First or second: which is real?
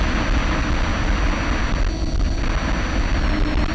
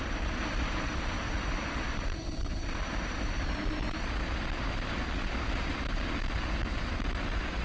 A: first